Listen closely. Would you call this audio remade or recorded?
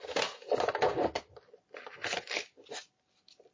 recorded